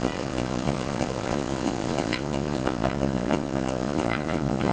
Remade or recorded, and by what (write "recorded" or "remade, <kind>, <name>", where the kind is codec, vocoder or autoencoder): remade, vocoder, Vocos